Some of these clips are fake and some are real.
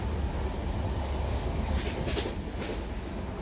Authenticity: real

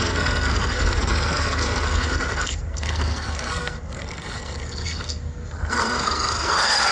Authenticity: fake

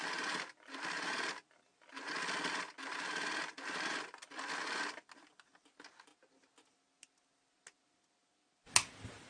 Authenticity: real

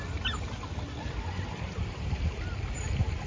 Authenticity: real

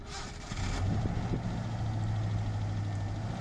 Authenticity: real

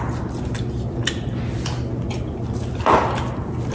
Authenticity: real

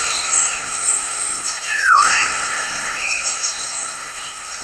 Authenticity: fake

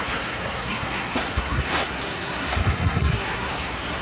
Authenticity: fake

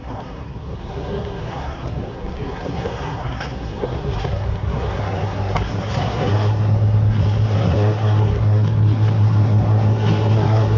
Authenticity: fake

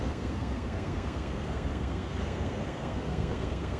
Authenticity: fake